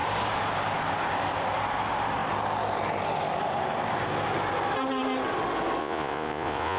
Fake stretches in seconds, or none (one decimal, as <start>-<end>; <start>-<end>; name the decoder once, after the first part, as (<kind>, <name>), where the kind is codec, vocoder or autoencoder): 5.8-6.8 (vocoder, Vocos)